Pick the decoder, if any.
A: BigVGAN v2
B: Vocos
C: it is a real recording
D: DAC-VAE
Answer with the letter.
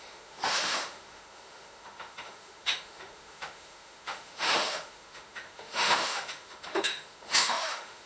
D